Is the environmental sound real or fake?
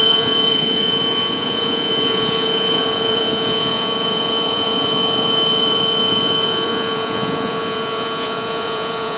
fake